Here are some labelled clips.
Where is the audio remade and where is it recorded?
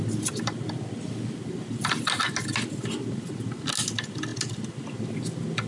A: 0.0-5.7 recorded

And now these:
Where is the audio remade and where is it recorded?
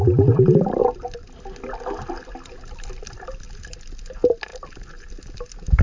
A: 0.0-5.8 recorded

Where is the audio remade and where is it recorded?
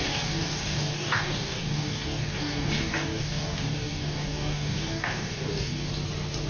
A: 0.0-5.9 remade; 5.9-6.5 recorded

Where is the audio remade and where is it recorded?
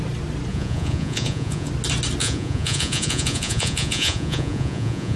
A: 0.0-0.5 recorded; 0.5-1.7 remade; 1.7-2.2 recorded; 2.2-5.2 remade